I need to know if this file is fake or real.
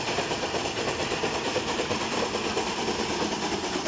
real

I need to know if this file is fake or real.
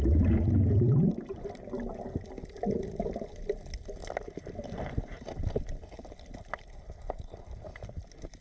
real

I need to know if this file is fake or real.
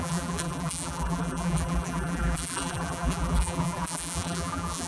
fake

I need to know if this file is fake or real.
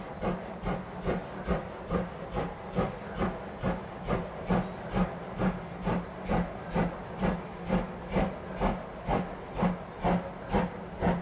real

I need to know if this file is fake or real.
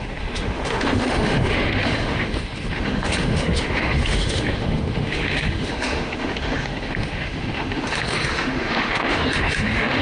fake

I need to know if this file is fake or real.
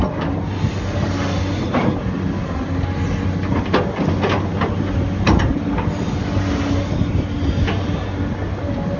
real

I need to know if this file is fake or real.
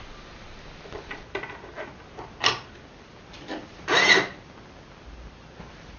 real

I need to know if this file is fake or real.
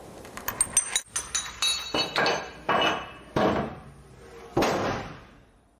real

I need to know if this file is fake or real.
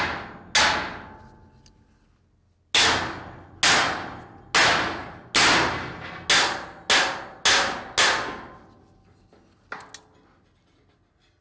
real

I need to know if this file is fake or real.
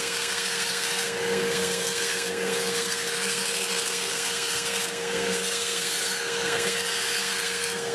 fake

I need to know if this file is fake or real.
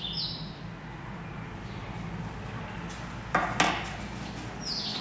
real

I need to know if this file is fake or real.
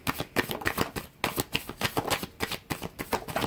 real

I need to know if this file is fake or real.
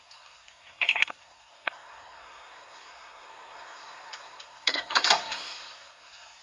fake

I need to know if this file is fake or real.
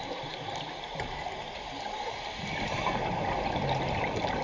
real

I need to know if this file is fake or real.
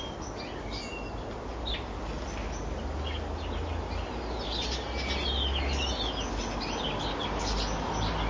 real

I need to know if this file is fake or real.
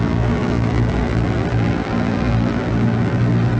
fake